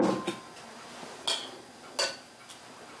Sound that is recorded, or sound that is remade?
recorded